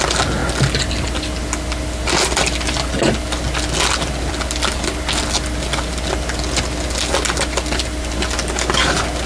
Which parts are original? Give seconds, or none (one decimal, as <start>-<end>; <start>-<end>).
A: 0.0-9.3